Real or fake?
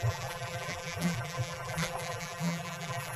fake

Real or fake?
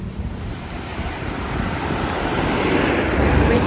fake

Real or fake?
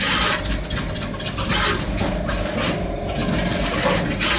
real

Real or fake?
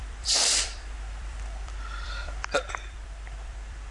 fake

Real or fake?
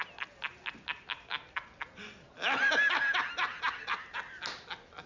real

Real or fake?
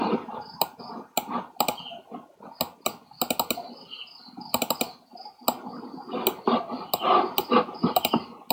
real